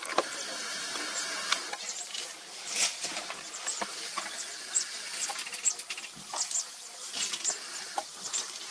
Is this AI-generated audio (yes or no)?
no